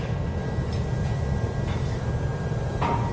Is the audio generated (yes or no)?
no